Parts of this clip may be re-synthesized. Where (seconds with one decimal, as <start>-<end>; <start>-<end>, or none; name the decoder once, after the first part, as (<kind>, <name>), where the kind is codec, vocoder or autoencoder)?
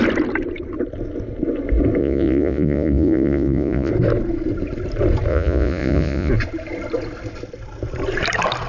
2.0-3.9 (vocoder, Vocos); 5.3-6.3